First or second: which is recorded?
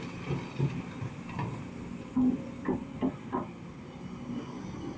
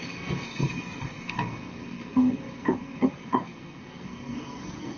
first